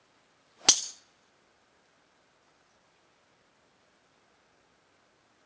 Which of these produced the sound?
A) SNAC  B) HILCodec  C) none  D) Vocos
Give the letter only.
C